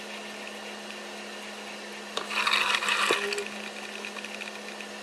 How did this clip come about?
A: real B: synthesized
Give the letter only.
A